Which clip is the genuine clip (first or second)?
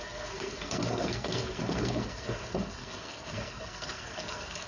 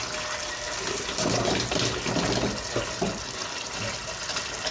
second